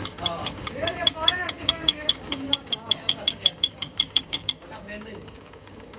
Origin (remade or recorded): remade